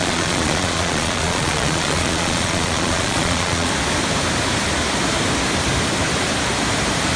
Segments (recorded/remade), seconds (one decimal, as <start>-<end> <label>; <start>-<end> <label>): 0.0-3.7 remade; 3.7-7.2 recorded

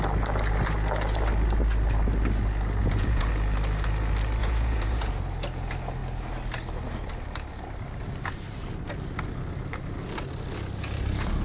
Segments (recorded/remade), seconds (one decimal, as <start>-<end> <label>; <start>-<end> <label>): 0.0-2.8 recorded; 2.8-3.3 remade; 3.3-4.4 recorded; 4.4-5.1 remade; 5.1-11.4 recorded